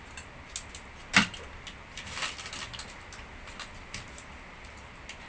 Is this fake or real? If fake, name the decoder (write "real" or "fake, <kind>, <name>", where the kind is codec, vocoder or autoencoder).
real